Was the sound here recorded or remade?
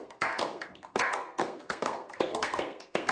remade